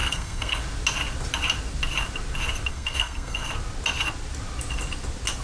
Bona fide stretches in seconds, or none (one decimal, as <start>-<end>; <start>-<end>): 0.6-2.7; 3.5-5.4